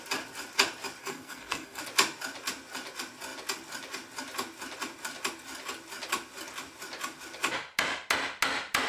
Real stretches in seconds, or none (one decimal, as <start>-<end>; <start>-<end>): 0.0-1.0; 1.8-8.9

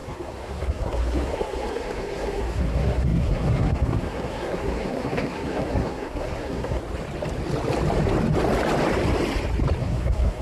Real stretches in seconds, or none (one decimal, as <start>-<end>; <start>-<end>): 6.8-9.8

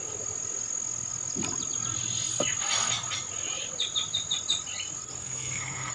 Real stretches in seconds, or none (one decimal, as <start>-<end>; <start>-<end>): 0.0-5.2

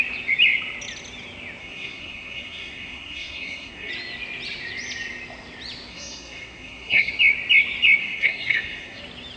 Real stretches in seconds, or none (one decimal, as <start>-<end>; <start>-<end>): 0.0-1.6; 3.9-5.9; 7.1-8.0; 9.0-9.4